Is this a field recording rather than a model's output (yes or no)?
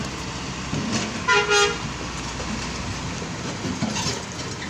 yes